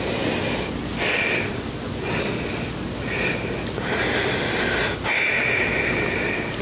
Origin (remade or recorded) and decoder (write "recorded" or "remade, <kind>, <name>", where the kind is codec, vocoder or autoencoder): recorded